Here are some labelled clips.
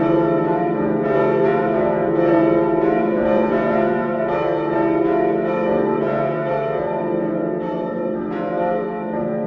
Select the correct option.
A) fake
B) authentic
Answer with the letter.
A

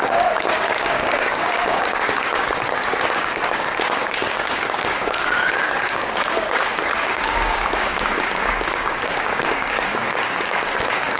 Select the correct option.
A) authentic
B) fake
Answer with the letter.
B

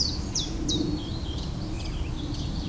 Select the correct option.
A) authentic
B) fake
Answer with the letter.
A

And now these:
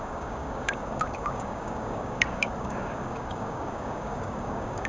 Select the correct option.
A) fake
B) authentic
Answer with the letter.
A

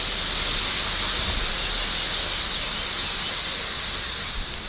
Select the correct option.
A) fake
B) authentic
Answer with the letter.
B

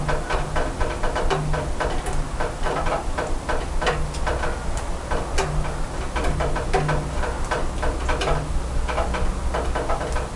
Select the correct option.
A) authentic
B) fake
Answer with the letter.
A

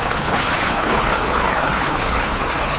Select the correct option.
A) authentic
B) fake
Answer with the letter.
B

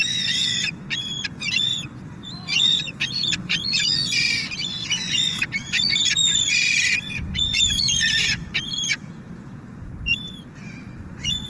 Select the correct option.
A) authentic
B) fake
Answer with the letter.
B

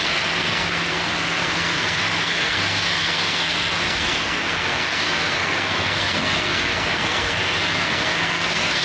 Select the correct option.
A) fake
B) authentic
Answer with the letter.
A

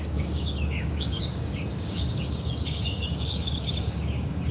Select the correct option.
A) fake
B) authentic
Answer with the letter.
A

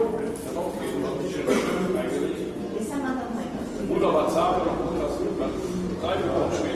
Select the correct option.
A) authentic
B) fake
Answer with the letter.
A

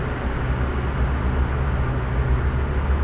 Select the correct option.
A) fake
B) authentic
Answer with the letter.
B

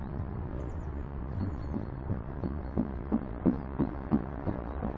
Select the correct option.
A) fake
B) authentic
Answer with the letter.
A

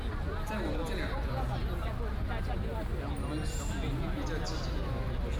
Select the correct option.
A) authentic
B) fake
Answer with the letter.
A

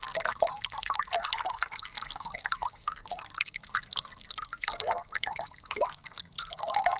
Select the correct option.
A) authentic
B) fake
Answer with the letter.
B